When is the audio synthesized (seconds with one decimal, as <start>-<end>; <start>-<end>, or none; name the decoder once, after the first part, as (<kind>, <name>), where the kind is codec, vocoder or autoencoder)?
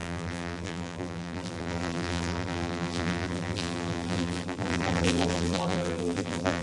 0.0-6.6 (vocoder, BigVGAN v2)